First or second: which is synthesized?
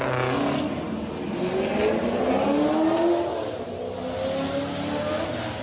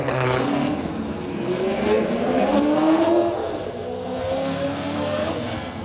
second